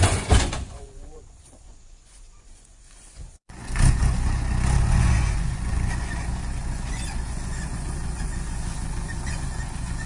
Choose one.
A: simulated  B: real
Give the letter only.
A